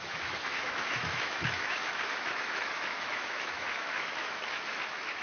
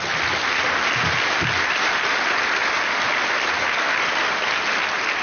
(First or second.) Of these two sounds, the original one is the second